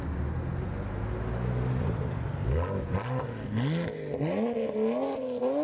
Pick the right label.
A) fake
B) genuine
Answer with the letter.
B